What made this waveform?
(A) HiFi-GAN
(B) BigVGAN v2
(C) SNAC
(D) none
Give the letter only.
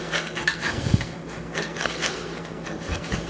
C